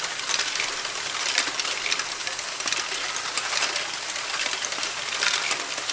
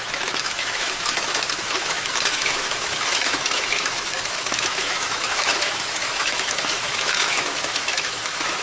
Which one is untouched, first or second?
first